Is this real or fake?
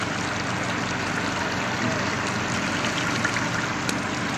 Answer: real